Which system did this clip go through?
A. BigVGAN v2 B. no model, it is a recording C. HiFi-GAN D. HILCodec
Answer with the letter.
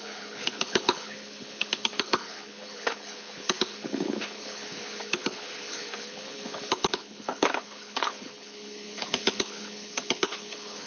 D